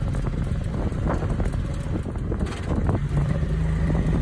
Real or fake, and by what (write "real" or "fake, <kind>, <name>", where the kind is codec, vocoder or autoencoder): real